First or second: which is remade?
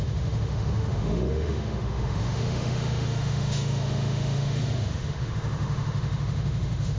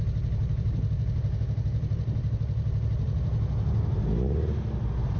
first